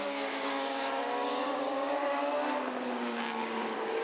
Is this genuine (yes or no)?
no